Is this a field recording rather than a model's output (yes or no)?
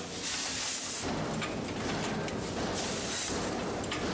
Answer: yes